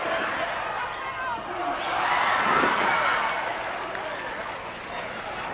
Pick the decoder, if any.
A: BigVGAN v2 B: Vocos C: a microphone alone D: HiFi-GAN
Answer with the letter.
C